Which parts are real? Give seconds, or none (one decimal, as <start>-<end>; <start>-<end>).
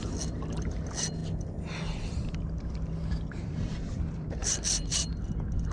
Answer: 1.2-1.9; 4.4-5.7